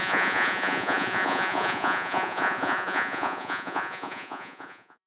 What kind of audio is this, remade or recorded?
remade